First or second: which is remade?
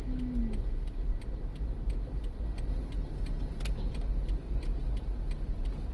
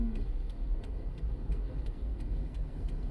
second